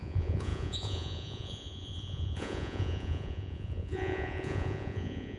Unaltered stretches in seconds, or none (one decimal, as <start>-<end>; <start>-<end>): none